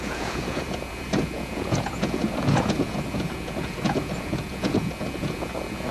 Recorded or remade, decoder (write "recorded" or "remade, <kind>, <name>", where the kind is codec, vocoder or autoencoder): remade, vocoder, Vocos